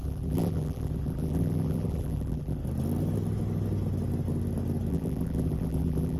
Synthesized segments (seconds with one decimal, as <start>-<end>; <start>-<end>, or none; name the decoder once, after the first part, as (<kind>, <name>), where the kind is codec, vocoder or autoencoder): 0.0-2.6 (vocoder, BigVGAN v2); 4.9-6.2